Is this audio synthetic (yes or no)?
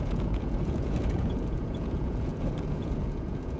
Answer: yes